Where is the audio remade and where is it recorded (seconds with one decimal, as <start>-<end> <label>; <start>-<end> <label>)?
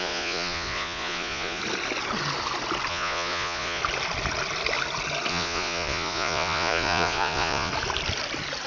0.0-1.6 remade; 1.6-2.9 recorded; 2.9-3.8 remade; 3.8-5.3 recorded; 5.3-7.7 remade; 7.7-8.7 recorded